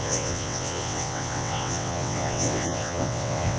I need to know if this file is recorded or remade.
remade